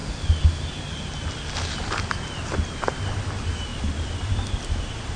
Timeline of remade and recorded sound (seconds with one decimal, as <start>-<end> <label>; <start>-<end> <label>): 0.0-5.2 recorded